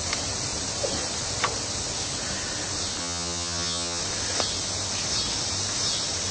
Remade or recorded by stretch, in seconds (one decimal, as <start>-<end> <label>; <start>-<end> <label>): 0.0-3.0 recorded; 3.0-4.0 remade; 4.0-6.3 recorded